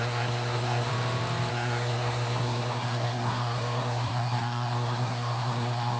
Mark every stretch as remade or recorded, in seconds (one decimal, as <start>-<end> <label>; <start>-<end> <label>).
0.0-0.9 remade; 0.9-1.5 recorded; 1.5-6.0 remade